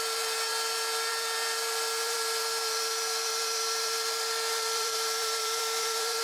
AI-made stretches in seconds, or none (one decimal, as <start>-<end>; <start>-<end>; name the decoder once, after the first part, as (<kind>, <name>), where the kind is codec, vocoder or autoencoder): 0.0-0.5 (vocoder, BigVGAN v2); 1.1-6.2